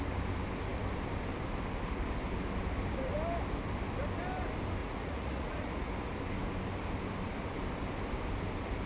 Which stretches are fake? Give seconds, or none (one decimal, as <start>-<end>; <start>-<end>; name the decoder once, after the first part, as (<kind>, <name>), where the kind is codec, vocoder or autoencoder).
4.8-5.9 (vocoder, Vocos)